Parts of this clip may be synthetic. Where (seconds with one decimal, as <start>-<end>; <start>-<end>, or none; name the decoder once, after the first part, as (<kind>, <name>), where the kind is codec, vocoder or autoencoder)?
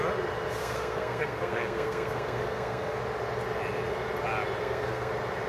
0.6-3.0 (codec, SNAC); 4.6-5.1